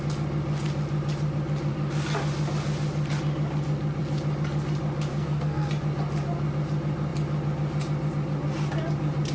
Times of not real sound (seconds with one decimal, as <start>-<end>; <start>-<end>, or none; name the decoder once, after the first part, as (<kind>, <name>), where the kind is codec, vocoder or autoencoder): 5.1-5.7 (codec, SNAC)